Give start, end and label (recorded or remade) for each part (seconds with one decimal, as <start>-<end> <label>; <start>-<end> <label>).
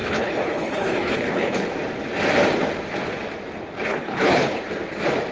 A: 0.0-1.7 remade; 1.7-3.9 recorded; 3.9-4.6 remade; 4.6-5.3 recorded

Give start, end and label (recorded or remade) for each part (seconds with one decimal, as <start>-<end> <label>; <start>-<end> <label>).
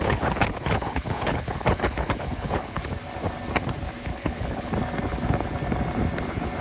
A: 0.0-2.9 remade; 2.9-4.1 recorded; 4.1-4.7 remade; 4.7-6.6 recorded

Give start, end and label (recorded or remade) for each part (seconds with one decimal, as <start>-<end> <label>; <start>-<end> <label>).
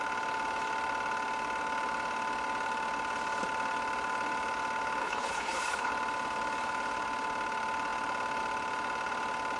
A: 0.0-5.0 recorded; 5.0-5.9 remade; 5.9-9.6 recorded